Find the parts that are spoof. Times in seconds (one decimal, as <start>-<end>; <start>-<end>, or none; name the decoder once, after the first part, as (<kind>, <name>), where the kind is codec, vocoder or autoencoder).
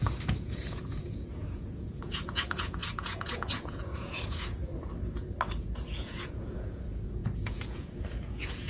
0.0-4.7 (vocoder, Vocos); 5.6-8.7